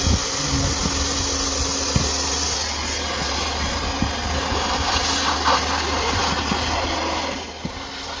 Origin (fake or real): real